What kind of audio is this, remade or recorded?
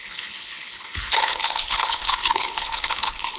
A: remade